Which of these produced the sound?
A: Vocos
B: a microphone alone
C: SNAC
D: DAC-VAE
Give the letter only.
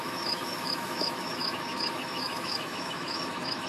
D